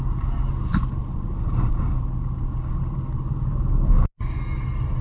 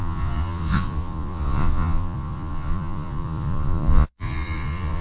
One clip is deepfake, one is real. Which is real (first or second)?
first